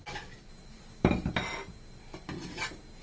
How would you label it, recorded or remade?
recorded